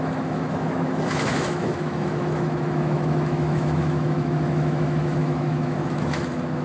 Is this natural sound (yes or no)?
no